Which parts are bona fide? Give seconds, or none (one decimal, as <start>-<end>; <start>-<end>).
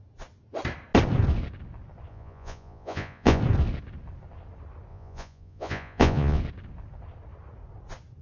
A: 0.0-2.1; 3.4-4.9; 6.4-8.2